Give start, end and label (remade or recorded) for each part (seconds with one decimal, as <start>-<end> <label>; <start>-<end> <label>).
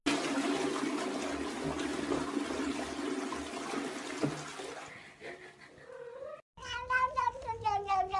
0.0-8.2 recorded